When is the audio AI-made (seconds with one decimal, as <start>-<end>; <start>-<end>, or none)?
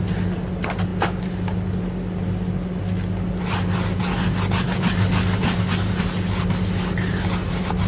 none